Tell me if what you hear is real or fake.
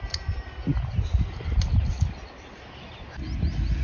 real